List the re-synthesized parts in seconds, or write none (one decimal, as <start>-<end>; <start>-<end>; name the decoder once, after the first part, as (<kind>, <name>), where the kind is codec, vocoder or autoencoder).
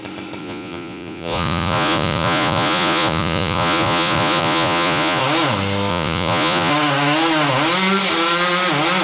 0.4-5.2 (vocoder, Vocos); 5.9-6.7